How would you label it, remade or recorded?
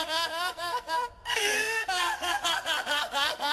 remade